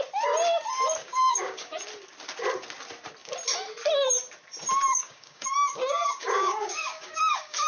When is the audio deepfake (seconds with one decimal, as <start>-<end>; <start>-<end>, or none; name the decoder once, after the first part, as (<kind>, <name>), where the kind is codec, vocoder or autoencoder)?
1.0-1.9 (codec, DAC); 4.9-7.7